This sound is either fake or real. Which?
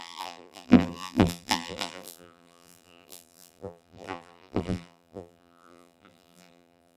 fake